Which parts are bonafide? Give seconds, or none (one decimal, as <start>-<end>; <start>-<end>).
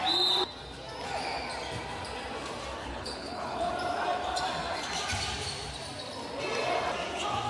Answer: 0.0-2.8; 3.7-7.5